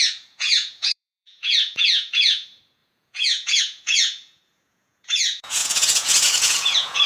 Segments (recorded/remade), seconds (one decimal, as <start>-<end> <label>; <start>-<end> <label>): 0.0-7.1 remade